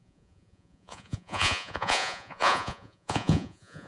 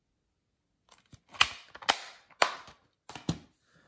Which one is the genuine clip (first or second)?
second